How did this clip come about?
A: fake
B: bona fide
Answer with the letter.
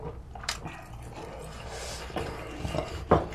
B